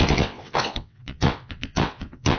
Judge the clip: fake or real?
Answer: fake